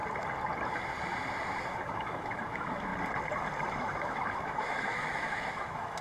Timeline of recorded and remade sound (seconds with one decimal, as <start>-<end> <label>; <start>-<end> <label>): 0.0-1.6 recorded; 1.6-2.9 remade; 2.9-3.7 recorded; 3.7-6.0 remade